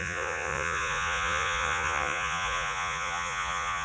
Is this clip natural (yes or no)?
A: no